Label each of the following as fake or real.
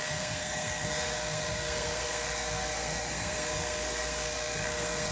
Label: fake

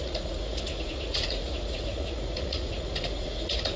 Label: fake